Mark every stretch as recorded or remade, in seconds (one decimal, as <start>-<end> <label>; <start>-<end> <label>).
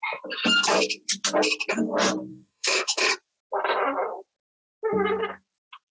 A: 0.0-2.3 recorded; 2.3-3.0 remade; 3.0-6.0 recorded